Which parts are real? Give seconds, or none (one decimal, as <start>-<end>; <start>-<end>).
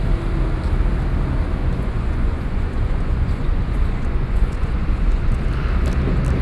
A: 0.0-1.6; 5.4-6.4